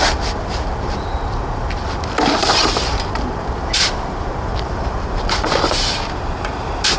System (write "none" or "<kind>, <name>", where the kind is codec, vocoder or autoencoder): vocoder, BigVGAN v2